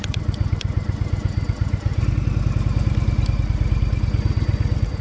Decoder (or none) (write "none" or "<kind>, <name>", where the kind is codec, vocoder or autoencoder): none